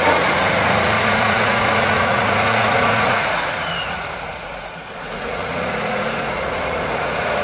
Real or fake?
fake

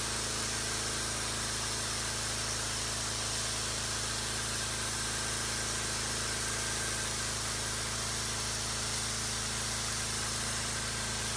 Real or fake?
real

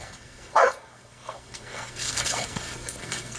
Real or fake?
fake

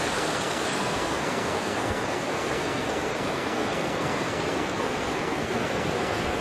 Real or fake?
fake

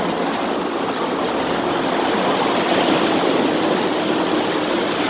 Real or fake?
real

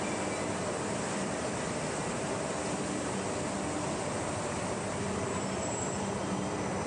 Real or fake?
real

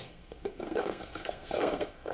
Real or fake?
fake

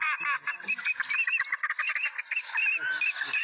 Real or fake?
real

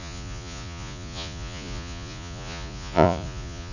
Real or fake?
fake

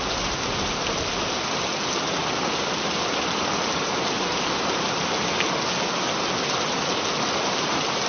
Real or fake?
real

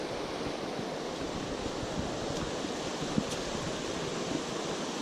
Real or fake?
real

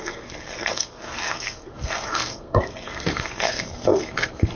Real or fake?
fake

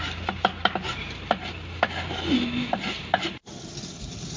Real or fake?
real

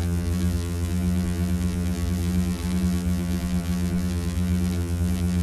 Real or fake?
fake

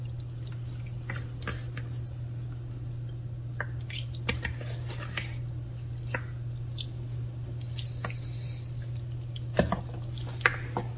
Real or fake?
real